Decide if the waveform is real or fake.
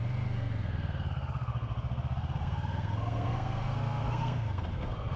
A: fake